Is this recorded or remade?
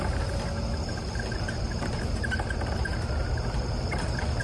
recorded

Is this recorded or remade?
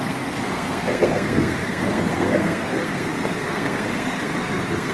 remade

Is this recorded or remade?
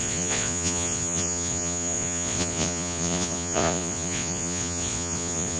remade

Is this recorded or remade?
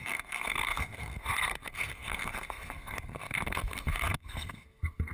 remade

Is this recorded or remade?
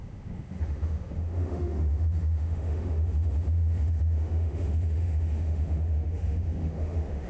remade